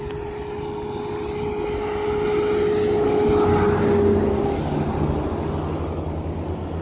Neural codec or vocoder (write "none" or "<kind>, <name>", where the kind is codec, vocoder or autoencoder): none